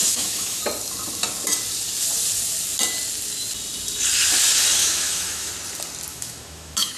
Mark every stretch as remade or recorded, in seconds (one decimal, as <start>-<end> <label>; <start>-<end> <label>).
0.0-0.6 remade; 0.6-4.8 recorded; 4.8-5.5 remade; 5.5-6.1 recorded; 6.1-7.0 remade

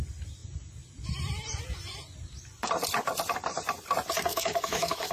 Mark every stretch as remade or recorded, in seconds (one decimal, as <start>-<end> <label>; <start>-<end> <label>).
0.0-4.3 recorded; 4.3-5.1 remade